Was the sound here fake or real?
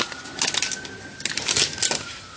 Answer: real